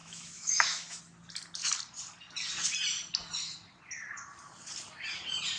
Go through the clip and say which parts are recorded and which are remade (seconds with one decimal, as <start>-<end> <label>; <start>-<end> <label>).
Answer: 0.0-1.0 remade; 1.0-5.6 recorded